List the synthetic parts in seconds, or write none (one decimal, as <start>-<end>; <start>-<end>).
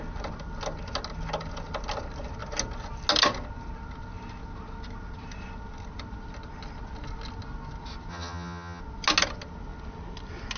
8.1-8.8